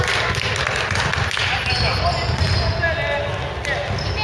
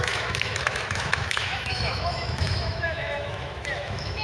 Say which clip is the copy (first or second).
second